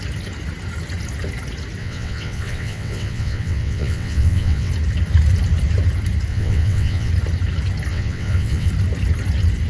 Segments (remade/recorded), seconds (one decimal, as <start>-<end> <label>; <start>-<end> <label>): 0.0-1.8 recorded; 1.8-4.7 remade; 4.7-6.3 recorded; 6.3-7.1 remade; 7.1-7.9 recorded; 7.9-8.7 remade; 8.7-9.7 recorded